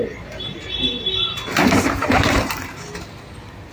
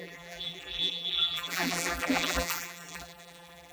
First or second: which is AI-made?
second